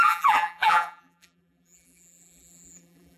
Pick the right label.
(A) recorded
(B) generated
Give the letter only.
B